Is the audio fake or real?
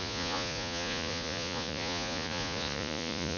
fake